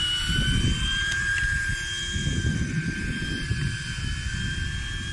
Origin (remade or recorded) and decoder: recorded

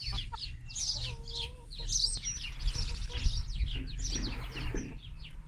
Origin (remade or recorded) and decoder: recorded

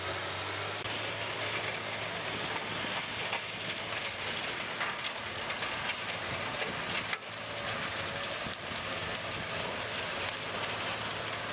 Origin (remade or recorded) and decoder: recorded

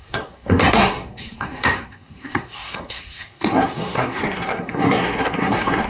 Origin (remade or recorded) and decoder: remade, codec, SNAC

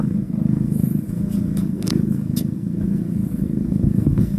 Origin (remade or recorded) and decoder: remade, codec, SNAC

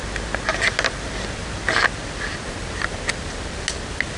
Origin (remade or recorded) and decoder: recorded